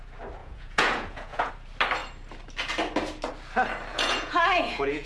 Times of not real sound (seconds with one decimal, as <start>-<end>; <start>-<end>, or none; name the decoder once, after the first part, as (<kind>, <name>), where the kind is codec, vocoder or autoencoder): 0.4-1.5 (vocoder, Vocos); 3.9-5.1

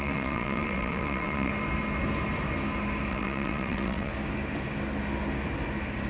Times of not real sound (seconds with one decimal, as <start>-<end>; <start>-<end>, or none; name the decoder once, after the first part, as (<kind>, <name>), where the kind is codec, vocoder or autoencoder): 0.0-1.5 (vocoder, WaveNeXt); 3.1-4.1

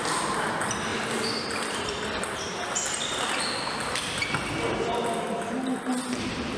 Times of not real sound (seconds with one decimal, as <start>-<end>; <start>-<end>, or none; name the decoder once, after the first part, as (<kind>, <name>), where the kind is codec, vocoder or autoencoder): 0.9-3.7 (vocoder, BigVGAN v2)